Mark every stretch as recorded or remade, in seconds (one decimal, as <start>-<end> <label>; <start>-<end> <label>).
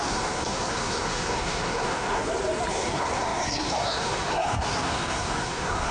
0.0-2.2 remade; 2.2-2.7 recorded; 2.7-5.9 remade